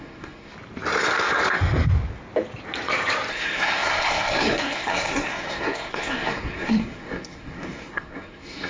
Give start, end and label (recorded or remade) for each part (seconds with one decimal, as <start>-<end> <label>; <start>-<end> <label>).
0.0-0.5 remade; 0.5-3.3 recorded; 3.3-8.7 remade